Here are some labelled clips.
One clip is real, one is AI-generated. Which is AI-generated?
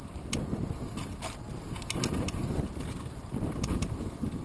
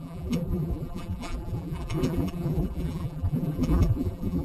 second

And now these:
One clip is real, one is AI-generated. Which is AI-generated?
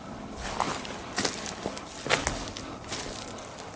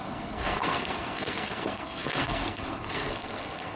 second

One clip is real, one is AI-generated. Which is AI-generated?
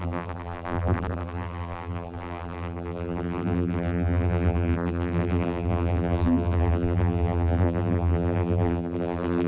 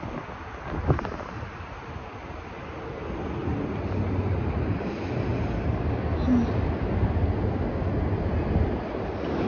first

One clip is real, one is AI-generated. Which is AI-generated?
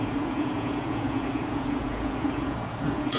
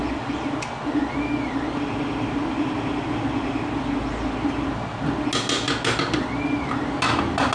first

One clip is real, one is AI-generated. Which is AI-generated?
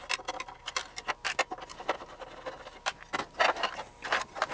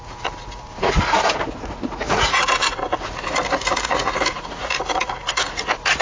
second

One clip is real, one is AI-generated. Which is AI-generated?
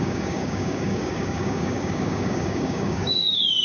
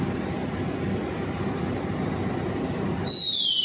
first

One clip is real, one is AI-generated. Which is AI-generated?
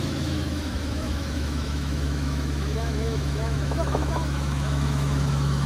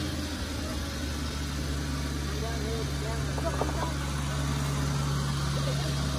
first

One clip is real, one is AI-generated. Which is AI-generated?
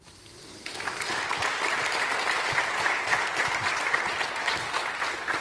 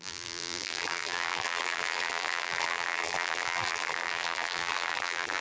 second